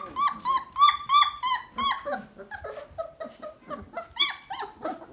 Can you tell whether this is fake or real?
real